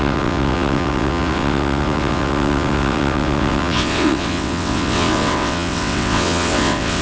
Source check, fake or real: fake